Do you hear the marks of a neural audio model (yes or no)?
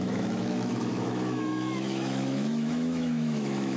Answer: yes